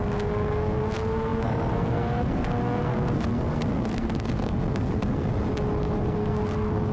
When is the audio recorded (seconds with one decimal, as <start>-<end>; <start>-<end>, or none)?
5.3-6.0